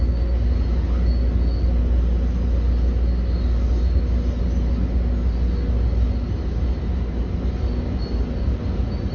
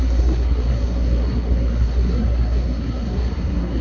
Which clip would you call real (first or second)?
first